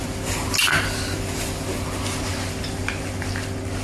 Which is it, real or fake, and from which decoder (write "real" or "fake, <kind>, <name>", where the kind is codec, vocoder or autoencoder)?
real